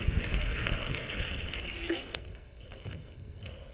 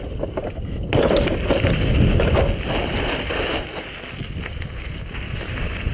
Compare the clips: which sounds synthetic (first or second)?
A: first